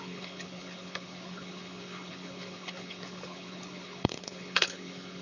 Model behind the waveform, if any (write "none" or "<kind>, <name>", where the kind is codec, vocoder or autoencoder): codec, HILCodec